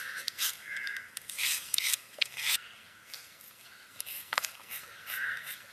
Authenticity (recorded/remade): remade